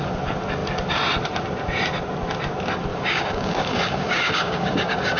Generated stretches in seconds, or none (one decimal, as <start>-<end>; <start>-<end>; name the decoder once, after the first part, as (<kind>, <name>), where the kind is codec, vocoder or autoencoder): 2.9-5.2 (codec, DAC)